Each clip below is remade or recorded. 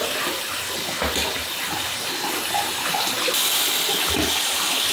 recorded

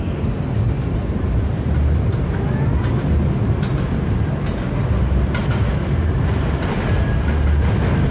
recorded